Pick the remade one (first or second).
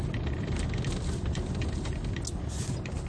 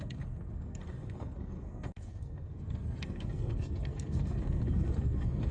second